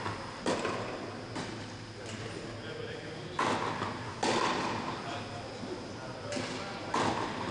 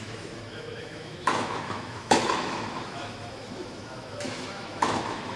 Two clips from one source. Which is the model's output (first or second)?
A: second